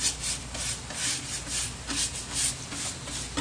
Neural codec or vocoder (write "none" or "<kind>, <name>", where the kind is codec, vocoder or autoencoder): none